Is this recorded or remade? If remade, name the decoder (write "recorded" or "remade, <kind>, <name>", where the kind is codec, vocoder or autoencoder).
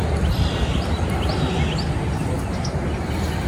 recorded